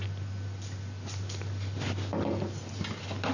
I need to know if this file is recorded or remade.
recorded